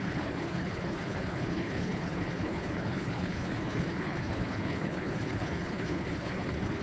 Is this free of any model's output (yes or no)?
no